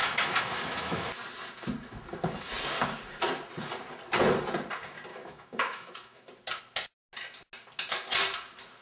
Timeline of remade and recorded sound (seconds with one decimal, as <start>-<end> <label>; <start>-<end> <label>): 0.0-1.1 remade; 1.1-5.1 recorded; 5.1-6.2 remade; 6.2-8.8 recorded